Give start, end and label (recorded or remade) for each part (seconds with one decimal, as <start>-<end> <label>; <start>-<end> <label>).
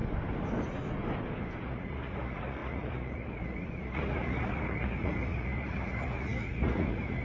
0.0-1.6 recorded; 1.6-7.2 remade